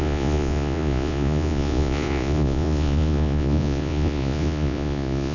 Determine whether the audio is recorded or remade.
remade